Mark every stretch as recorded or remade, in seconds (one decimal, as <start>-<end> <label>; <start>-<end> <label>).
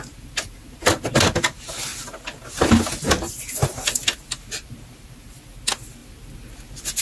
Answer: 0.0-7.0 recorded